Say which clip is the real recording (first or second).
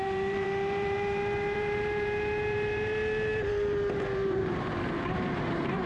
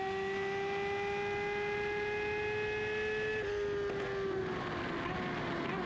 second